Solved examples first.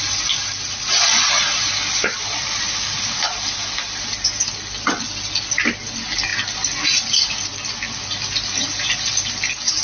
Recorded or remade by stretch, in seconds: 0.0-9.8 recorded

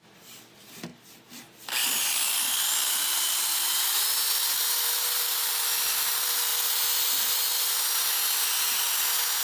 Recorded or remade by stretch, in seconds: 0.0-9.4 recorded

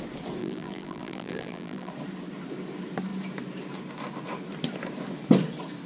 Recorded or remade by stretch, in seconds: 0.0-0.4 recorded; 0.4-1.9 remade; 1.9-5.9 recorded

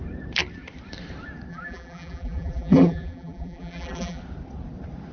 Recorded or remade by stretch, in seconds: 0.0-1.5 recorded; 1.5-4.2 remade; 4.2-5.1 recorded